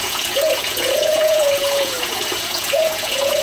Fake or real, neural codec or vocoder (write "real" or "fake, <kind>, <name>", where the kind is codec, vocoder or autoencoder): fake, vocoder, Vocos